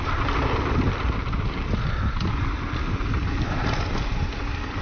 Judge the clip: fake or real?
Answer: real